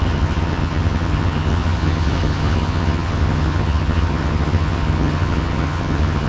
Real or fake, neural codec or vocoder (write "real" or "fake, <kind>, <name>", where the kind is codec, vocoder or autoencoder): fake, vocoder, HiFi-GAN